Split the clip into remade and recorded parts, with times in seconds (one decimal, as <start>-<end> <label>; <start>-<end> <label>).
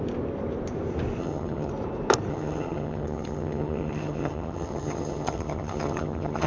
0.0-1.2 recorded; 1.2-1.7 remade; 1.7-2.3 recorded; 2.3-6.5 remade